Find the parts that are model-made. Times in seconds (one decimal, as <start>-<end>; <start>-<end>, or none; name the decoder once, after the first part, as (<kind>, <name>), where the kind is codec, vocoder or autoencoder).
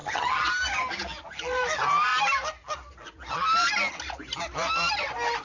0.0-0.5 (vocoder, HiFi-GAN)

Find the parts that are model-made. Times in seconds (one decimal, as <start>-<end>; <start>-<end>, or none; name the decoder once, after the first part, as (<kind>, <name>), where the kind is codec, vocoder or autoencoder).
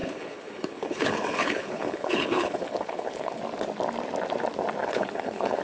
0.0-3.4 (codec, HILCodec); 4.8-5.6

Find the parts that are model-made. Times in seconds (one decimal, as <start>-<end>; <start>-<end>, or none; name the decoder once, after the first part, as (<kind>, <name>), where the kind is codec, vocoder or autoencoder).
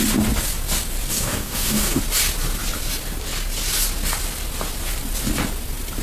1.1-2.0 (codec, DAC)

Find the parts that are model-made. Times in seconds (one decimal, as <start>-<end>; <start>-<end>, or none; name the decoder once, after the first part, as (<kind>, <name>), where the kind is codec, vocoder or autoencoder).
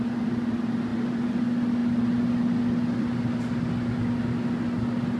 0.9-1.4 (vocoder, BigVGAN v2)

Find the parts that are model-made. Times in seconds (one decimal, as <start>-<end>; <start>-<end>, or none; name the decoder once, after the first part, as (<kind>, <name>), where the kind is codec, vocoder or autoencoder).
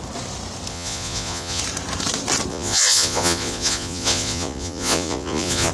0.7-1.6 (vocoder, Vocos); 2.5-5.7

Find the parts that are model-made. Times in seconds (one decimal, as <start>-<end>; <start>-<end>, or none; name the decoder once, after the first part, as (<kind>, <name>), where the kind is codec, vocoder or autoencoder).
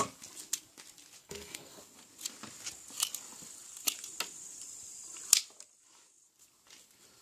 1.2-1.8 (codec, SNAC)